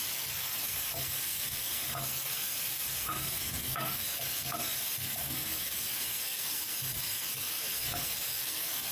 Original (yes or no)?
no